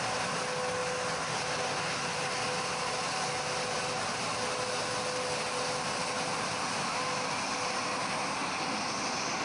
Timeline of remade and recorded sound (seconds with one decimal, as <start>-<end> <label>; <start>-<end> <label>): 0.0-9.4 recorded

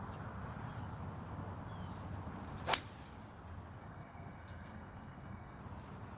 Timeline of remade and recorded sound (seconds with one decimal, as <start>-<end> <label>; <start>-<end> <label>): 0.0-3.8 recorded; 3.8-5.6 remade; 5.6-6.2 recorded

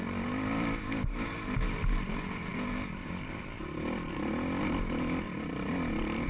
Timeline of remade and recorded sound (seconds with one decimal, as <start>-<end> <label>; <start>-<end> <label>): 0.0-6.3 recorded

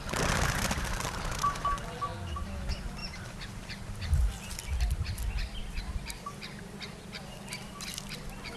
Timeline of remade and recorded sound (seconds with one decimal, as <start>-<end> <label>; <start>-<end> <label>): 0.0-3.0 recorded; 3.0-3.8 remade; 3.8-8.6 recorded

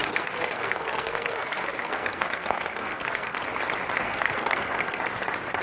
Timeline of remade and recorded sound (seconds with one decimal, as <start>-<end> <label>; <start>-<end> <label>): 0.0-3.4 remade; 3.4-4.0 recorded; 4.0-5.0 remade; 5.0-5.6 recorded